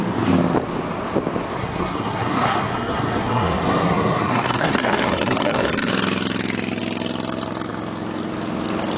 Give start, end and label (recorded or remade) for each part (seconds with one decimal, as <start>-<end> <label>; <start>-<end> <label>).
0.0-1.6 recorded; 1.6-5.9 remade; 5.9-9.0 recorded